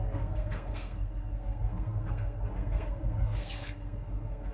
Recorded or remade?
remade